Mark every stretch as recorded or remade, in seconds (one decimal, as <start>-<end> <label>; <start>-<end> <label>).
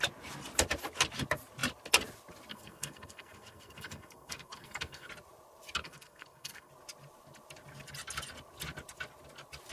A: 0.0-2.5 recorded; 2.5-5.1 remade; 5.1-5.8 recorded; 5.8-6.7 remade; 6.7-9.7 recorded